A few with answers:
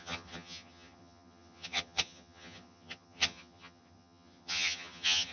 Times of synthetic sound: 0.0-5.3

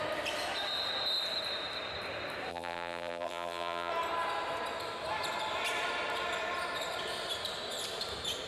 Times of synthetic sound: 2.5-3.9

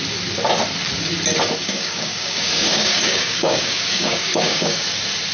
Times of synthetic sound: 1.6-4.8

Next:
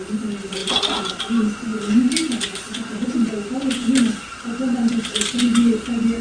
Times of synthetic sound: none

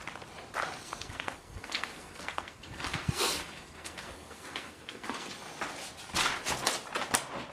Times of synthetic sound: 0.8-5.3